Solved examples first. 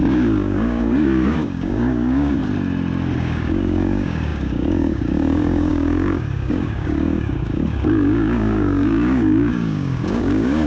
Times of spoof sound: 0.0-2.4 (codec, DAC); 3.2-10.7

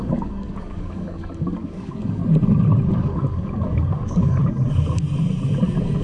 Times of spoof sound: 0.0-2.2 (codec, DAC); 2.9-4.4

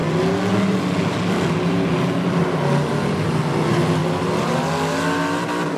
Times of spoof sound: none

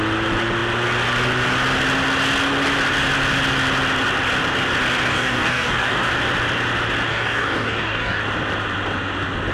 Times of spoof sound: 5.1-6.1 (codec, DAC); 7.1-8.2